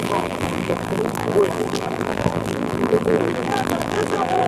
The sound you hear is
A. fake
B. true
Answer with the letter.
A